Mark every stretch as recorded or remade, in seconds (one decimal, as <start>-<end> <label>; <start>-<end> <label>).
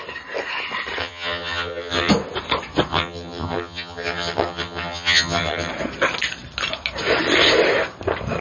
0.0-1.0 recorded; 1.0-2.1 remade; 2.1-2.9 recorded; 2.9-5.7 remade; 5.7-8.4 recorded